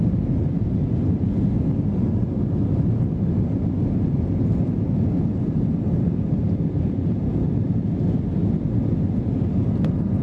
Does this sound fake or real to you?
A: real